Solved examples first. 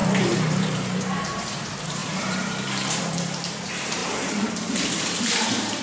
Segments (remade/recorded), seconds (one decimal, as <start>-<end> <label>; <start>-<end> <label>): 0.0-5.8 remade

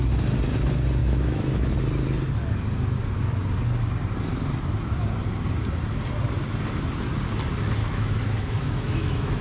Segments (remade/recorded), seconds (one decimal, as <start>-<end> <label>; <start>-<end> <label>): 0.0-1.0 recorded; 1.0-1.7 remade; 1.7-7.8 recorded; 7.8-9.4 remade

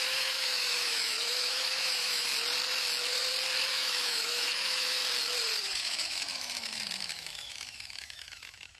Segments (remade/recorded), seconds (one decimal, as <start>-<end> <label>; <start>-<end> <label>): 0.0-2.3 remade; 2.3-3.7 recorded; 3.7-5.0 remade; 5.0-5.6 recorded; 5.6-8.8 remade

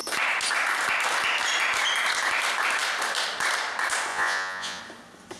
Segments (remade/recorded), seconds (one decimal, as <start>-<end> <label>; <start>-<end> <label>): 0.0-4.1 recorded; 4.1-4.8 remade; 4.8-5.4 recorded

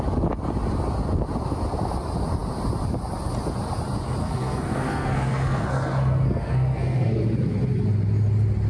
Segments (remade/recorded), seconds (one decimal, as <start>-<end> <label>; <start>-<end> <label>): 0.0-4.2 recorded; 4.2-7.2 remade; 7.2-8.7 recorded

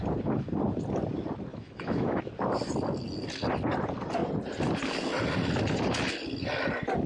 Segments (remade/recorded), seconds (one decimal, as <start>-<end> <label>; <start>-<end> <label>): 0.0-1.5 recorded; 1.5-2.3 remade; 2.3-7.1 recorded